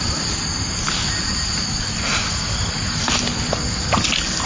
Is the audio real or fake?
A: real